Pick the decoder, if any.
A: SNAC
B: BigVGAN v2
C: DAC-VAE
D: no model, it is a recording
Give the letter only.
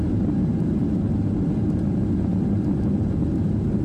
D